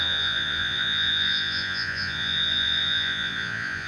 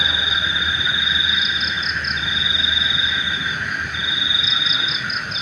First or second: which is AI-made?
first